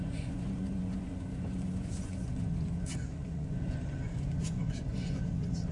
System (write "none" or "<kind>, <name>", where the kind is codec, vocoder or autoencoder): vocoder, Vocos